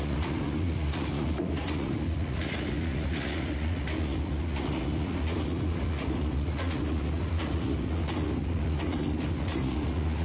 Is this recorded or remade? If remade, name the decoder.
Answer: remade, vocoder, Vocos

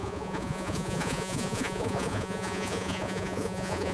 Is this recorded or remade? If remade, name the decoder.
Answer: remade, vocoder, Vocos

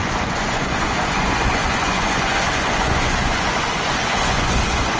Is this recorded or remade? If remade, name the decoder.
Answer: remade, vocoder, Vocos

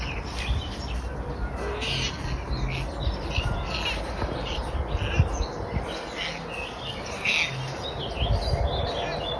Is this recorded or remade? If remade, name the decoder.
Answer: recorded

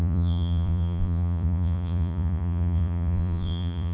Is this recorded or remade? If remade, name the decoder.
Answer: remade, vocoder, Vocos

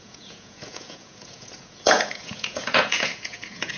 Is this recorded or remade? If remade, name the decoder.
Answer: remade, vocoder, Vocos